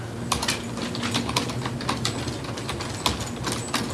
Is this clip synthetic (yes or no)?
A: no